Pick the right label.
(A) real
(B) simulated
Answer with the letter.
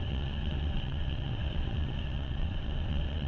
B